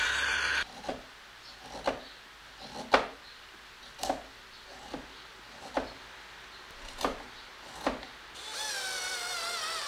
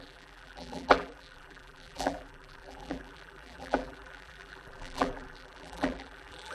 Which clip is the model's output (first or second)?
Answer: second